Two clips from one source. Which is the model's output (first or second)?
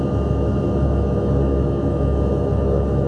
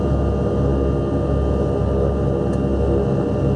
first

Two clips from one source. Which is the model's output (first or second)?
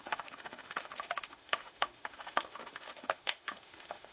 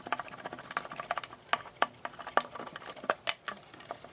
first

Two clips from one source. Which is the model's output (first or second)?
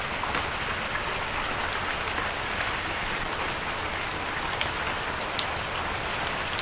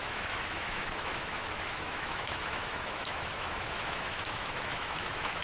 second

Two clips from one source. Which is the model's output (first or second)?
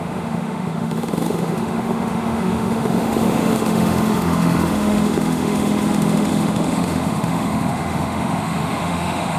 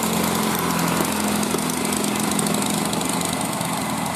first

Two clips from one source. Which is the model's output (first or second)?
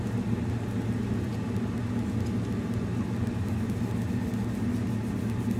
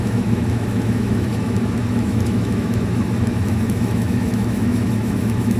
second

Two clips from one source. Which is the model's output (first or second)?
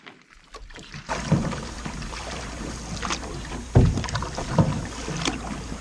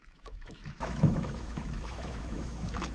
second